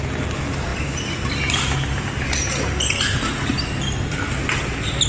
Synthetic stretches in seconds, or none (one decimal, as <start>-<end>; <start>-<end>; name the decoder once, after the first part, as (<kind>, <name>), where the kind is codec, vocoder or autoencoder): none

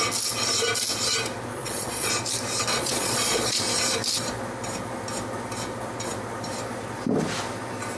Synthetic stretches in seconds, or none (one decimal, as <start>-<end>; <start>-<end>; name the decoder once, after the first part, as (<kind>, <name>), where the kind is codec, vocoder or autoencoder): 1.5-2.1 (vocoder, Vocos); 2.7-3.6

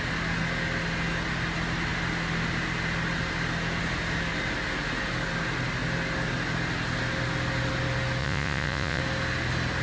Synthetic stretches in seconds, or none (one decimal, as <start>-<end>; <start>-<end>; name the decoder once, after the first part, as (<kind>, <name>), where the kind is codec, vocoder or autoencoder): 8.2-9.0 (vocoder, Vocos)

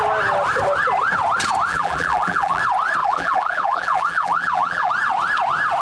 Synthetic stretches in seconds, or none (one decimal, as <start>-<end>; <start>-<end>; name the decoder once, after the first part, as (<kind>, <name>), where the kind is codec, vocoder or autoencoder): 1.7-2.6 (vocoder, BigVGAN v2); 3.0-4.9

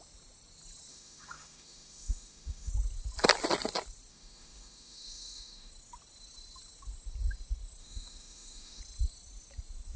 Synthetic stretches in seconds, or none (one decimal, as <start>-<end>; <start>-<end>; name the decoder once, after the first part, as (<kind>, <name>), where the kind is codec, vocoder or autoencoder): 0.9-2.7 (autoencoder, DAC-VAE); 4.1-5.7; 7.8-8.8

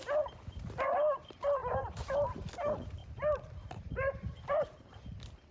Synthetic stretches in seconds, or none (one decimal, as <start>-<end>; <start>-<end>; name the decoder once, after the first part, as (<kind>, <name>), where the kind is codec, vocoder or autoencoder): 1.6-2.4 (vocoder, BigVGAN v2); 3.0-5.0

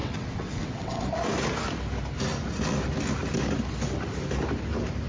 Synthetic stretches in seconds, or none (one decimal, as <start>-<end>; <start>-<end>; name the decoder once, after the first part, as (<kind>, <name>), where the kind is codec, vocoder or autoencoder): 0.0-1.0 (vocoder, WaveNeXt)